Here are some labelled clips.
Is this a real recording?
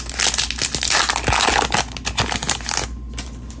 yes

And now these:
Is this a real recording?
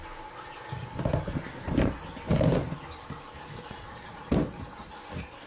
yes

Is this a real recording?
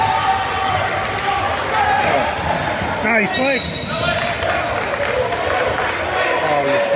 yes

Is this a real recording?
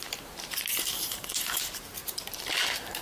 no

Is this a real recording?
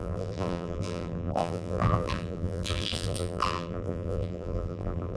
no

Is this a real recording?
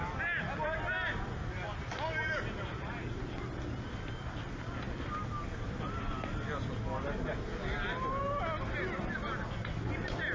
yes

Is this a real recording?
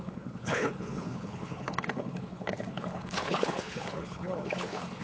no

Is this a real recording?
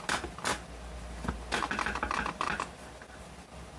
yes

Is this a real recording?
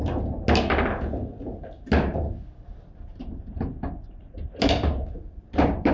yes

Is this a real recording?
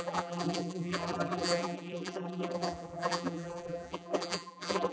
no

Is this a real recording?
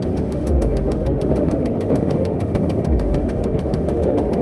no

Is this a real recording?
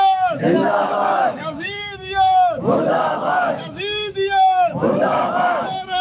no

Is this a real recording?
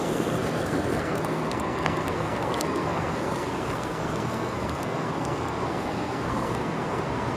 no